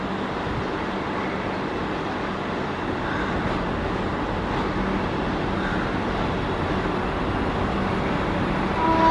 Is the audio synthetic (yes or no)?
no